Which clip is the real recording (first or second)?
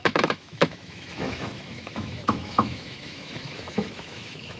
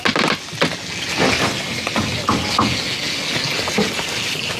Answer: second